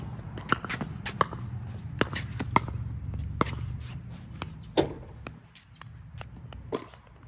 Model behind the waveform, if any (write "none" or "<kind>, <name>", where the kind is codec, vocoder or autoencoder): none